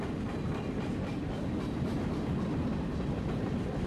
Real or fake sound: fake